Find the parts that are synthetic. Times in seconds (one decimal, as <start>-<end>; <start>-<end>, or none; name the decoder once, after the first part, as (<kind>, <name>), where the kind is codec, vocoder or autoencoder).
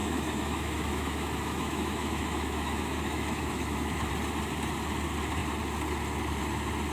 0.0-4.1 (autoencoder, DAC-VAE)